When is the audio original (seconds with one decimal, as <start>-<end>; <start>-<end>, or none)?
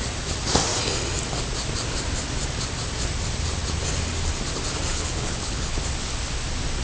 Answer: 0.0-4.9; 5.8-6.8